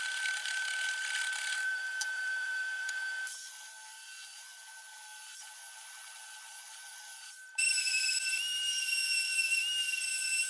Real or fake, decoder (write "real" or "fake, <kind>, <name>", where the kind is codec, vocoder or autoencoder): fake, vocoder, BigVGAN v2